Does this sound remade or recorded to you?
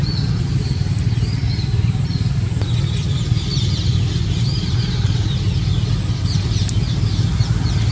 recorded